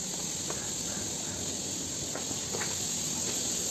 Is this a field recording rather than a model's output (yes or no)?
yes